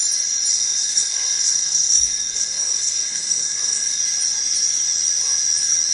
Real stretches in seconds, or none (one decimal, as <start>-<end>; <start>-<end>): 0.0-0.5; 4.0-5.9